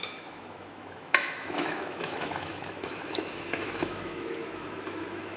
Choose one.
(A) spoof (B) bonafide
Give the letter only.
A